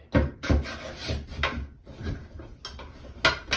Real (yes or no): yes